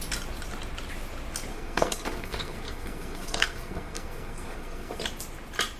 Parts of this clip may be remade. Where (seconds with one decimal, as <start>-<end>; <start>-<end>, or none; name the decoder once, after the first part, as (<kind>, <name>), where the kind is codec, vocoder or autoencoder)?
1.5-5.0 (codec, SNAC)